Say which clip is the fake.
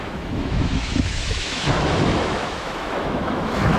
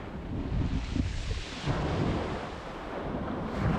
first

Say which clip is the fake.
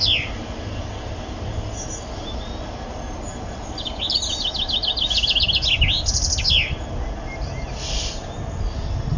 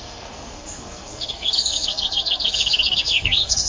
second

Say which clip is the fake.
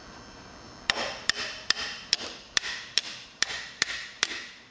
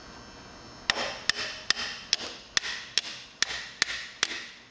first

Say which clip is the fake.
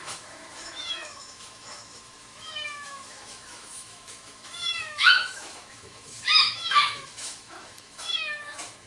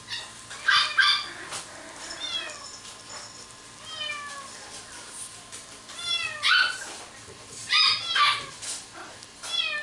first